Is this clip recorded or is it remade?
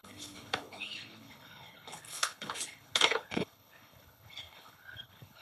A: remade